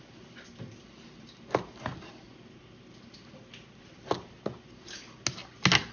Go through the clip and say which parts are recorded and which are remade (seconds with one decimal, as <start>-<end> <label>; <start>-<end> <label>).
0.0-5.9 recorded